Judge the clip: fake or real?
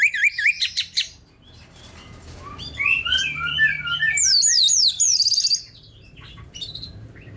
fake